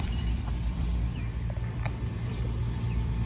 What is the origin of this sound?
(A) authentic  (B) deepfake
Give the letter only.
B